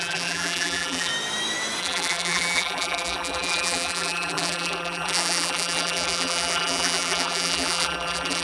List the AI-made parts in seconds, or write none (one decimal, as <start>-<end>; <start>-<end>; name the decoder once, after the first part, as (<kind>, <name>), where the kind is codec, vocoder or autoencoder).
0.0-1.1 (vocoder, BigVGAN v2); 1.8-8.4

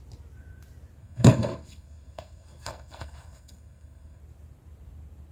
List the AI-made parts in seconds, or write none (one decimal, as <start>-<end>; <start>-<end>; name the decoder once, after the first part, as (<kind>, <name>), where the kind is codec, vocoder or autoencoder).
1.0-4.2 (codec, SNAC)

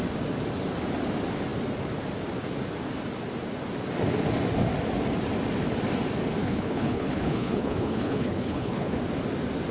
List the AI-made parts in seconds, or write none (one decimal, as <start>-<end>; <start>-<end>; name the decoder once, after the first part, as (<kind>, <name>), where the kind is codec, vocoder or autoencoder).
6.4-9.0 (codec, HILCodec)

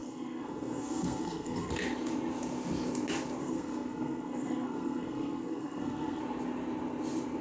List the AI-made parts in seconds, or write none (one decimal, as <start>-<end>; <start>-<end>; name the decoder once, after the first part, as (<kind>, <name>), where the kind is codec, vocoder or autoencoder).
0.0-1.7 (codec, SNAC); 3.4-6.2

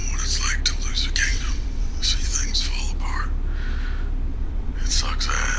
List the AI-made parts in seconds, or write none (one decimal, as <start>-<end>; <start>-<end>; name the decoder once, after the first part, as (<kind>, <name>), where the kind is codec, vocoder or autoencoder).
1.3-2.3 (vocoder, WaveNeXt); 4.3-5.0